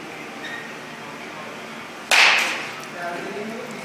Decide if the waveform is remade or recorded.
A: recorded